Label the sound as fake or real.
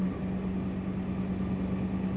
real